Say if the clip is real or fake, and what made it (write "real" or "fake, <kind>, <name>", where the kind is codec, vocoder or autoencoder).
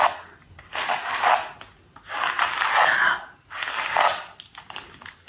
real